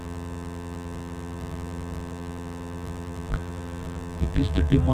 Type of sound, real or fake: fake